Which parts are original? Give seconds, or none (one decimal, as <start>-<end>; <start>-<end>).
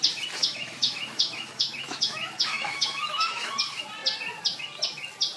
0.0-0.4; 3.5-5.4